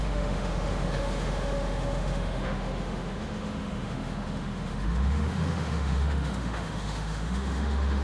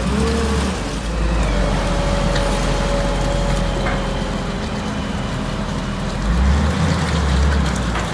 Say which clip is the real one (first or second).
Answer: second